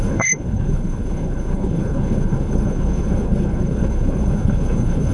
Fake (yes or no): yes